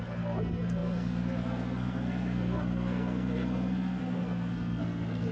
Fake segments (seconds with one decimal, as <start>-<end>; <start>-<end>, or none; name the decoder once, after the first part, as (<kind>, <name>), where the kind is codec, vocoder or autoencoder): 0.0-5.3 (codec, SNAC)